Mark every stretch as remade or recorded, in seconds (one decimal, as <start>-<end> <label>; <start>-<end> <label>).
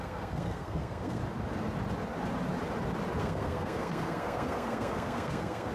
0.0-1.2 remade; 1.2-3.2 recorded; 3.2-5.7 remade